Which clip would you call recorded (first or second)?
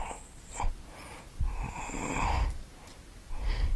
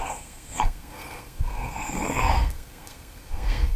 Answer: first